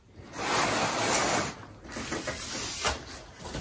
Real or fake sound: real